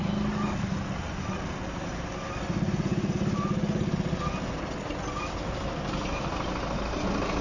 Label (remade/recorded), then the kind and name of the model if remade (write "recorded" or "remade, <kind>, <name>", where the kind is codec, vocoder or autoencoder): recorded